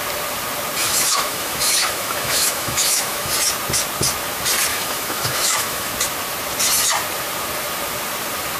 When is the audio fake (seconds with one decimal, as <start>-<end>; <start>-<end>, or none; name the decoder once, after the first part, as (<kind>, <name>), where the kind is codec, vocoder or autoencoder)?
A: 0.8-3.3 (autoencoder, DAC-VAE); 4.7-5.9